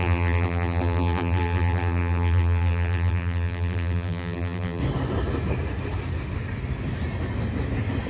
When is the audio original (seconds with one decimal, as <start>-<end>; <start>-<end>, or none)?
4.8-8.1